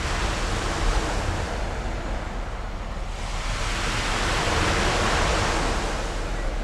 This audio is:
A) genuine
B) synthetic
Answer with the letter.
A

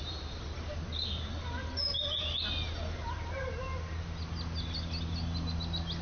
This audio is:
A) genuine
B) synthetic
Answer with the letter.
A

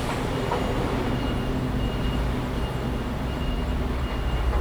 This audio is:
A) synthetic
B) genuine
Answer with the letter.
B